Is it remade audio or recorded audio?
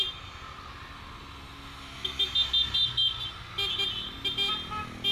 recorded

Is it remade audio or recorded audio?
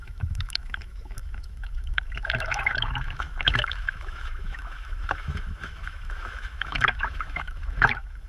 remade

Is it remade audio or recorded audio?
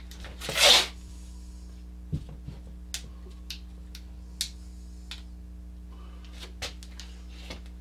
recorded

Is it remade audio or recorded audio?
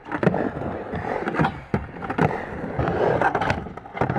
recorded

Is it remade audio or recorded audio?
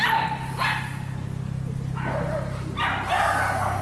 recorded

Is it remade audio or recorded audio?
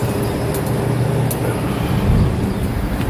recorded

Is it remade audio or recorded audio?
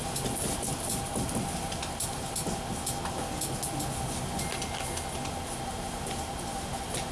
recorded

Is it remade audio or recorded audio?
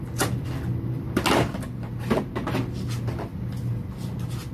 recorded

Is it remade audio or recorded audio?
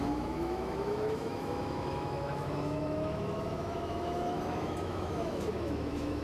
remade